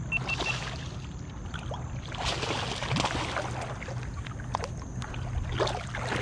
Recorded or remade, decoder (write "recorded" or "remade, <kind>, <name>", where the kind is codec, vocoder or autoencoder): recorded